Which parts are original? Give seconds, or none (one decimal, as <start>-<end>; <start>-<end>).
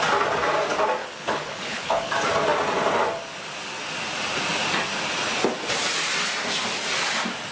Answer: 0.0-1.0; 2.1-7.5